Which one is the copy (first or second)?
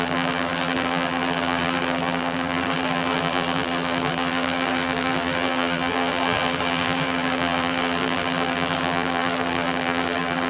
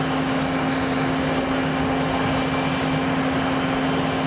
first